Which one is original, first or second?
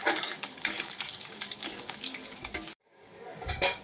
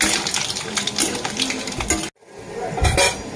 second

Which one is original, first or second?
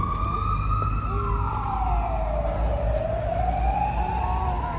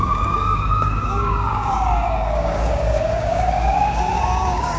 first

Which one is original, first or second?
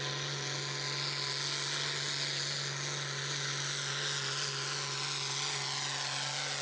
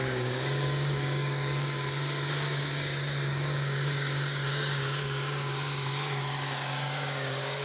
first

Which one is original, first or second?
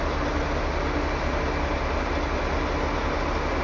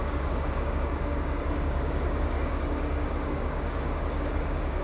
first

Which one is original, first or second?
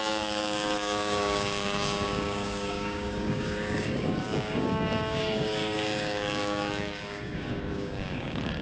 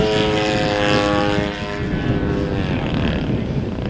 second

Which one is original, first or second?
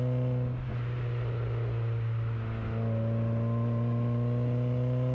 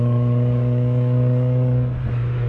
first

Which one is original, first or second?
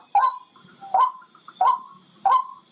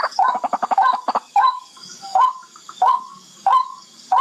first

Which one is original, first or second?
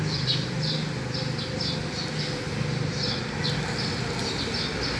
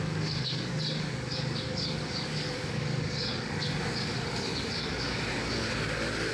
first